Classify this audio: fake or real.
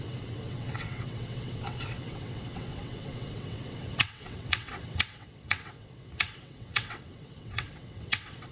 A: fake